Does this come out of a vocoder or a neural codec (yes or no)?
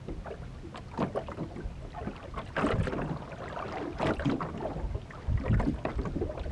no